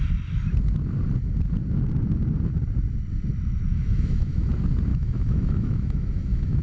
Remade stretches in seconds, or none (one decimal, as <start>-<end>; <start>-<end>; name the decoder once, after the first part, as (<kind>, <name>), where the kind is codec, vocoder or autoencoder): 3.7-4.5 (autoencoder, DAC-VAE); 4.9-6.6